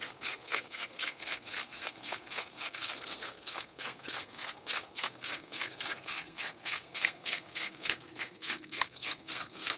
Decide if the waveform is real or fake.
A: fake